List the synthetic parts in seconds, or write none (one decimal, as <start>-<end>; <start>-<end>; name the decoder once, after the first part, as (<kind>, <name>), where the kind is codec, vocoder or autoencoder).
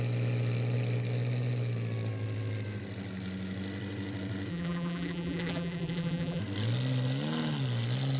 4.5-6.4 (vocoder, BigVGAN v2)